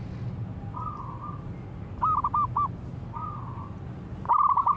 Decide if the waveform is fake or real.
real